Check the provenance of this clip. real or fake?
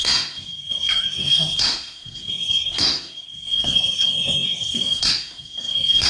fake